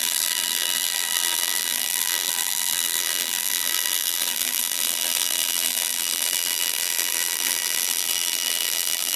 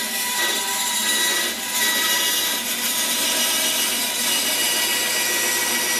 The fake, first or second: first